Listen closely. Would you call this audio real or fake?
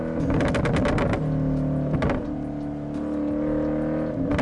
real